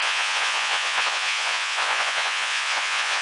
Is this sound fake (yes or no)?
yes